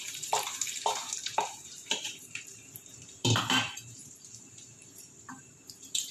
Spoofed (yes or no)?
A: yes